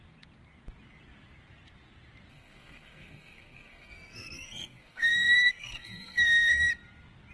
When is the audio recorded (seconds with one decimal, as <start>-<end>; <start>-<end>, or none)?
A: 0.0-2.3; 6.7-7.3